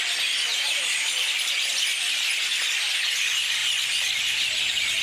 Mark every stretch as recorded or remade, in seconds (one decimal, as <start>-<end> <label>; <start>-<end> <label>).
0.0-0.5 recorded; 0.5-1.5 remade; 1.5-1.9 recorded; 1.9-2.5 remade; 2.5-3.6 recorded; 3.6-4.6 remade; 4.6-5.0 recorded